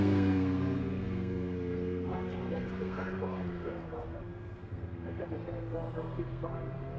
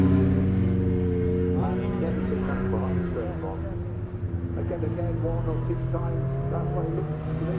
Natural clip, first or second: second